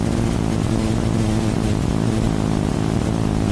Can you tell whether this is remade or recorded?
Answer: recorded